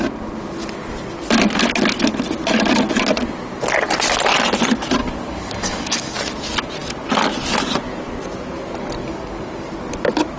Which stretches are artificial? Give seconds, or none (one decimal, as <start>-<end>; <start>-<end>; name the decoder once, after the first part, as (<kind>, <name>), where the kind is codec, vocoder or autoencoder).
5.0-6.2 (codec, DAC); 9.0-9.7

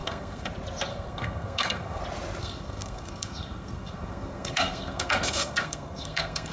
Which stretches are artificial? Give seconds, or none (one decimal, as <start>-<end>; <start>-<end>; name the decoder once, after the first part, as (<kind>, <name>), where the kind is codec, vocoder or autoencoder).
0.0-0.5 (codec, SNAC); 0.9-2.0; 2.4-6.5

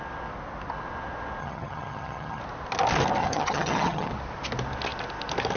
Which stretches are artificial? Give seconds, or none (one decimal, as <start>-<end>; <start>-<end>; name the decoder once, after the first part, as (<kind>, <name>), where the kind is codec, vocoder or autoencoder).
1.4-2.4 (vocoder, HiFi-GAN); 3.2-4.1

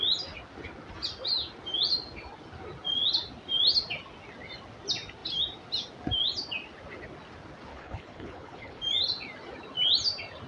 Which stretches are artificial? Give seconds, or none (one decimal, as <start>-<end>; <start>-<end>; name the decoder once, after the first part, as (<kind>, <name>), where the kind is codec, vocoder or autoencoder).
7.7-8.8 (codec, HILCodec)

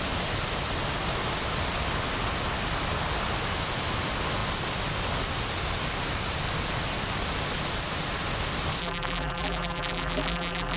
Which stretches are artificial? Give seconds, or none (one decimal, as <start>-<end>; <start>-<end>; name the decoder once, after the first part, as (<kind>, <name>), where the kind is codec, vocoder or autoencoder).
8.8-10.8 (vocoder, BigVGAN v2)

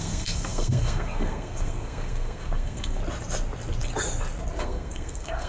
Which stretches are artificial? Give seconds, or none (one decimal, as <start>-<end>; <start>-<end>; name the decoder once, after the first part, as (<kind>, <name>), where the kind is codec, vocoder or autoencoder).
0.0-3.0 (codec, SNAC); 4.6-5.5